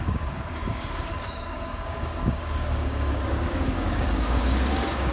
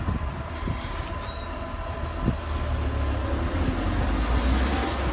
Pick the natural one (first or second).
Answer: second